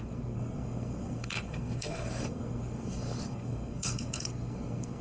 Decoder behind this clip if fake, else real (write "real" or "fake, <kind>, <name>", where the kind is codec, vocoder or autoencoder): fake, codec, SNAC